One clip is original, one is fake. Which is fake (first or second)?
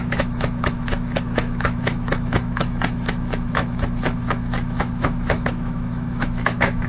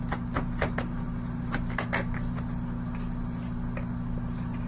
first